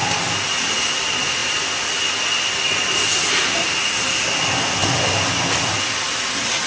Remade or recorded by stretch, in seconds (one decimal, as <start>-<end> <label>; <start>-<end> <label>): 0.0-6.7 recorded